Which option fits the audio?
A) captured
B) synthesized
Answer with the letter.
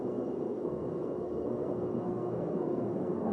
B